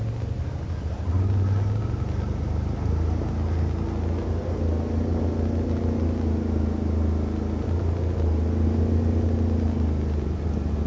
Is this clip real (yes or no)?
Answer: yes